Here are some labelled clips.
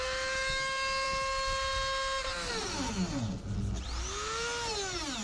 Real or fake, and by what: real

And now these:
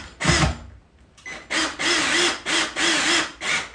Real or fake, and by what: real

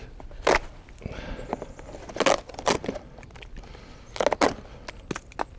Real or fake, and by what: real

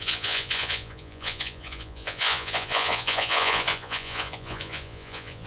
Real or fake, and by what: fake, vocoder, Vocos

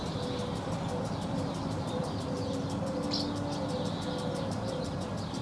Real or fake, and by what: real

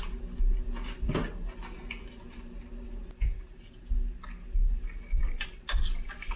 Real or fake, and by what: real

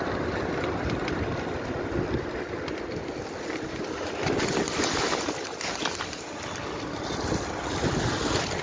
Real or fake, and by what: real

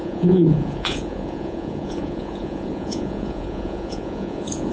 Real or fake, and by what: fake, vocoder, Vocos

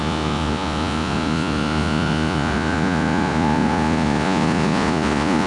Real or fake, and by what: fake, vocoder, Vocos